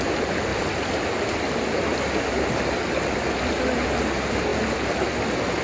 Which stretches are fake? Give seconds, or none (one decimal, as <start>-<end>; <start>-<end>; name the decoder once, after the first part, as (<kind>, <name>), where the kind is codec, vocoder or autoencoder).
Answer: 0.0-5.6 (vocoder, BigVGAN v2)

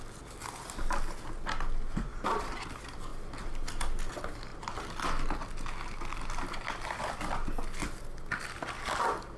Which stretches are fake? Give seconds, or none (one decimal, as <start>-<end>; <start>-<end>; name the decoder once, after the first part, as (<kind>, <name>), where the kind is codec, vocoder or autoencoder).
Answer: none

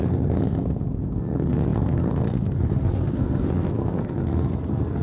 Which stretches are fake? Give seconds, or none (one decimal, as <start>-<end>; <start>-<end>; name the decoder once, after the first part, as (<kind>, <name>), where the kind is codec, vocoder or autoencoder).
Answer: 0.0-5.0 (codec, SNAC)

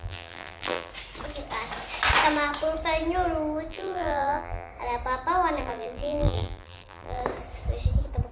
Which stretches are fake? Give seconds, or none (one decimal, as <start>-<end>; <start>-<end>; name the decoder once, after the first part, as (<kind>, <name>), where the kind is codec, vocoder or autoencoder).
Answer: 0.0-0.9 (vocoder, BigVGAN v2); 3.7-4.7; 5.6-7.2

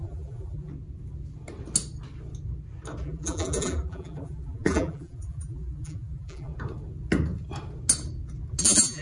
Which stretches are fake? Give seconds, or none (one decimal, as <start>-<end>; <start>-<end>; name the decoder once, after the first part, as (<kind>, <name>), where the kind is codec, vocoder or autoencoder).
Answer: 0.0-0.7 (vocoder, BigVGAN v2); 3.0-6.5; 8.6-9.0

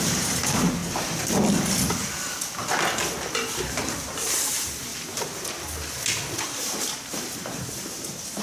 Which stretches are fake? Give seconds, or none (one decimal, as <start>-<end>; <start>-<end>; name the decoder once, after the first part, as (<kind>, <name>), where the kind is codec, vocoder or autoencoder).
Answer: 0.0-0.8 (vocoder, BigVGAN v2); 3.6-4.9; 6.6-8.4

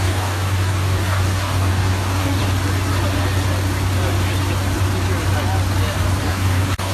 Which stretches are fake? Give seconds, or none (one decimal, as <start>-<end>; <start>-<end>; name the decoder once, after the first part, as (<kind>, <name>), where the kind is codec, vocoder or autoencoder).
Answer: 0.0-2.4 (codec, DAC); 6.3-6.9

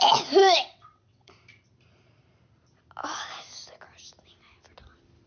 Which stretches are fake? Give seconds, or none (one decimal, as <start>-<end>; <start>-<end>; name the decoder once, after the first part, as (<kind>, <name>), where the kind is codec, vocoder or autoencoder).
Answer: 0.4-1.3 (vocoder, WaveNeXt)